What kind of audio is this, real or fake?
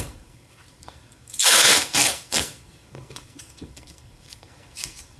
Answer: fake